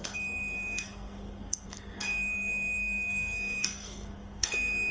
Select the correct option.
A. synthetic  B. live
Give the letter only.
A